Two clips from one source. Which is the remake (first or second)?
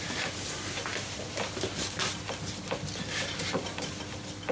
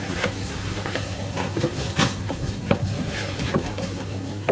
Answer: second